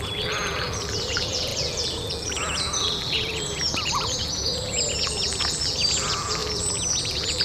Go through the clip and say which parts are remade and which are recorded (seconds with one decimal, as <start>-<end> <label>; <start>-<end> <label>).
0.0-7.4 remade